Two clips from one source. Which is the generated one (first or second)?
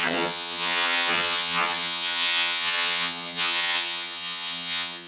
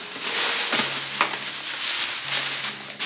first